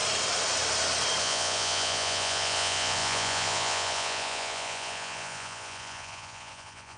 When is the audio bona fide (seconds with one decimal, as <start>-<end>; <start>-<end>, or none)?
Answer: 0.0-1.2